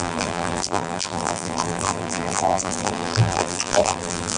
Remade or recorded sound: remade